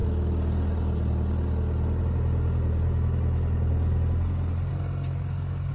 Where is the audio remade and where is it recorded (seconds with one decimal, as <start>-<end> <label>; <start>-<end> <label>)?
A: 0.0-4.7 recorded; 4.7-5.7 remade